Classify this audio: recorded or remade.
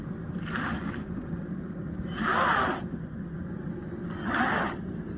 recorded